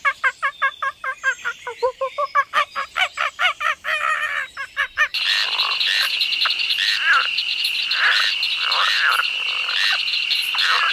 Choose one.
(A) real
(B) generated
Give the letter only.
B